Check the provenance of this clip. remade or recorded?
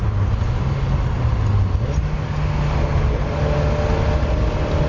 recorded